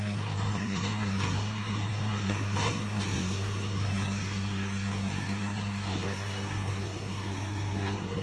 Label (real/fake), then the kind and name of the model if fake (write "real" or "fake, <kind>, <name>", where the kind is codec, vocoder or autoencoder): fake, codec, SNAC